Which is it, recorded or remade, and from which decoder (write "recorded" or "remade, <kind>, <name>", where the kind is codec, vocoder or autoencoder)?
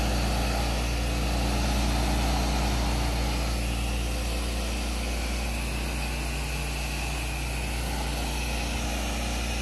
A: recorded